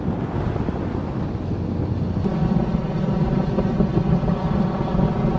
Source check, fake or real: real